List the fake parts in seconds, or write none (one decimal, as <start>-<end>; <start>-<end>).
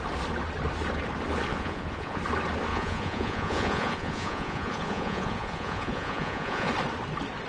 1.5-2.2; 2.7-6.7